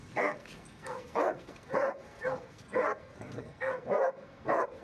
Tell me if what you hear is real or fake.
fake